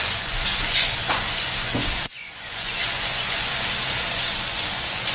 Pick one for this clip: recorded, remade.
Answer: remade